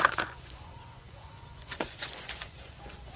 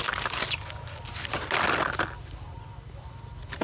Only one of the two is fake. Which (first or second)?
first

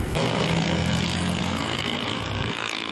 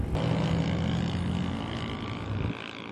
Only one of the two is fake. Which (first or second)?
first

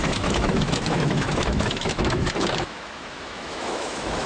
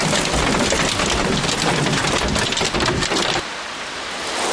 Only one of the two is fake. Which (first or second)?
first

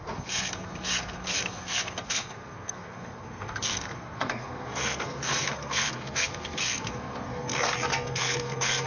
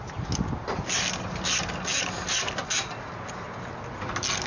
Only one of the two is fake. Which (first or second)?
first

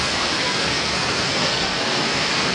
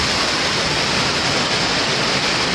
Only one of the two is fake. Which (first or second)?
first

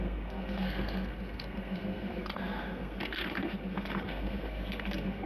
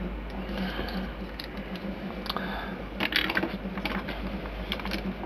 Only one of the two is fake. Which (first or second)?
first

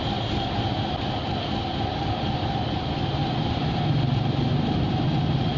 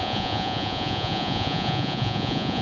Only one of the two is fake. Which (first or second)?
second